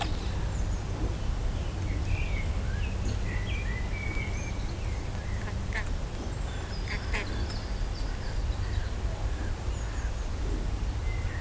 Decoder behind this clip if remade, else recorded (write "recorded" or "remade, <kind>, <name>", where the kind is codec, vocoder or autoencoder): recorded